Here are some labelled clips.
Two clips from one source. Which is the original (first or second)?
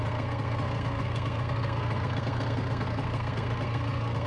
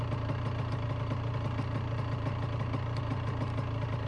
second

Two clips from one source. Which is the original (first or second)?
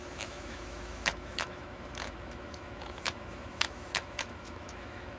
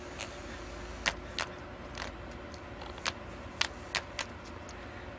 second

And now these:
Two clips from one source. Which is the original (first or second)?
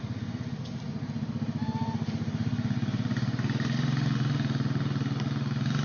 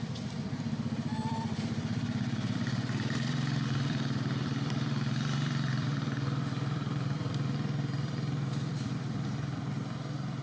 first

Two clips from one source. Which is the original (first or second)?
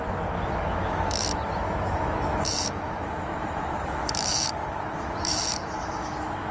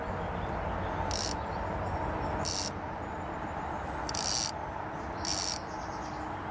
second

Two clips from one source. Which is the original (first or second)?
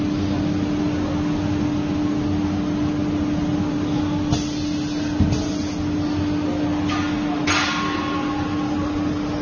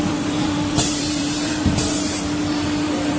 first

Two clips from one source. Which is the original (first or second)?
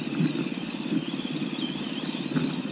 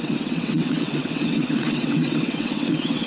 first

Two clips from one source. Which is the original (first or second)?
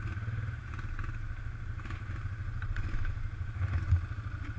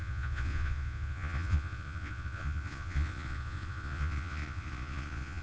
first